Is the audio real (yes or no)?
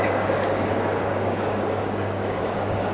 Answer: no